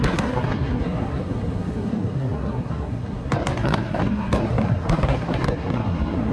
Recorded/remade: remade